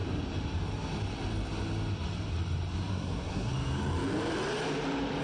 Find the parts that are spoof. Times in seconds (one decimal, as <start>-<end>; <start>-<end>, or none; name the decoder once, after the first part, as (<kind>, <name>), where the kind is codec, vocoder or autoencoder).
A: 2.9-3.5 (codec, SNAC)